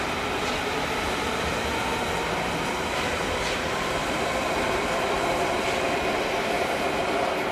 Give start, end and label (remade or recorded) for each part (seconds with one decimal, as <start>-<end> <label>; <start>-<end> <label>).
0.0-0.5 remade; 0.5-2.7 recorded; 2.7-7.5 remade